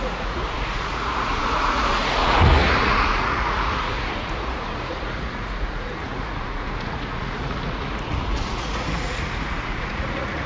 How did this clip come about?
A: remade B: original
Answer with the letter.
A